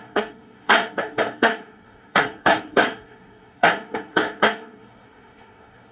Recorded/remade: remade